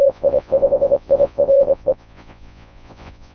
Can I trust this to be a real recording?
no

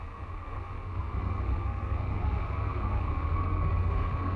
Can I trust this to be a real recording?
no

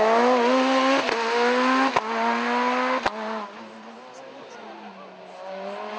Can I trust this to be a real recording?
yes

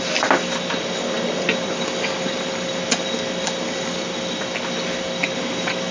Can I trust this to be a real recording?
yes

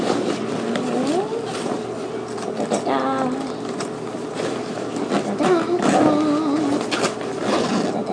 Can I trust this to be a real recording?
yes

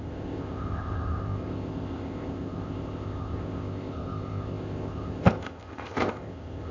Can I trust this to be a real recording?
no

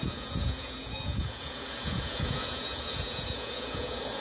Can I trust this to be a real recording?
no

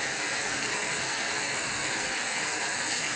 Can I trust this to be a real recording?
no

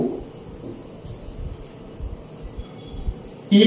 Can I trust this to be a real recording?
yes